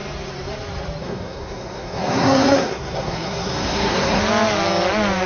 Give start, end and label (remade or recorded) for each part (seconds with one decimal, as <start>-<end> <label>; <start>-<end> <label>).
0.0-1.0 recorded; 1.0-4.2 remade; 4.2-5.3 recorded